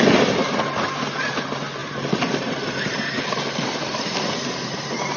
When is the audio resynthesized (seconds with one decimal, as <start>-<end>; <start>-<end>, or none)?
1.8-5.2